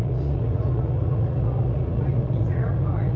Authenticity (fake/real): fake